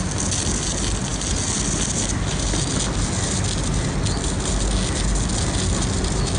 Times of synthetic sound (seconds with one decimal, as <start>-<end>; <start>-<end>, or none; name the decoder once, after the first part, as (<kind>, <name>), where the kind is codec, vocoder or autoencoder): none